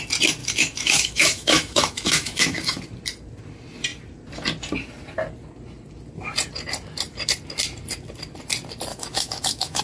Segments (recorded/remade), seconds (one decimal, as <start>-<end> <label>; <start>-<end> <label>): 0.0-0.4 recorded; 0.4-2.8 remade; 2.8-8.9 recorded; 8.9-9.8 remade